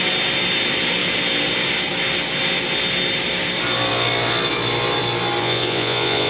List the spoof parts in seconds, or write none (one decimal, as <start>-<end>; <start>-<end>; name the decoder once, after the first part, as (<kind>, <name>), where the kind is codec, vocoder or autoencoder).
5.4-6.3 (vocoder, Vocos)